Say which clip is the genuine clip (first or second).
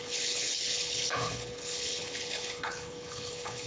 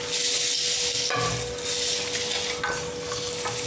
second